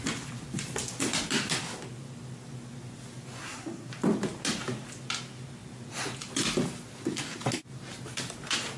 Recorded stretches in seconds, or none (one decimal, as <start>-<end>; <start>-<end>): 0.0-3.4; 3.9-8.8